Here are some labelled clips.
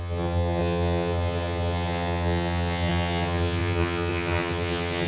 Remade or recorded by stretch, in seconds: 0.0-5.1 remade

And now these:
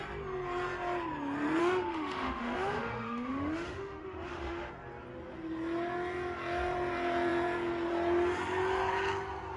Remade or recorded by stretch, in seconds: 0.0-1.6 recorded; 1.6-4.7 remade; 4.7-9.6 recorded

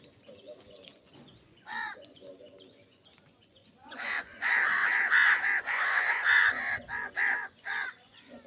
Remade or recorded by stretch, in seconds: 0.0-8.5 remade

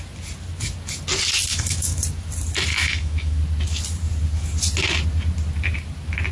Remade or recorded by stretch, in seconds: 0.0-1.5 recorded; 1.5-2.0 remade; 2.0-2.7 recorded; 2.7-3.4 remade; 3.4-6.3 recorded

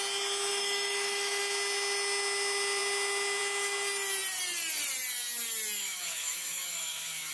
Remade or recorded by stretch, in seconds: 0.0-0.5 recorded; 0.5-1.4 remade; 1.4-5.8 recorded; 5.8-7.3 remade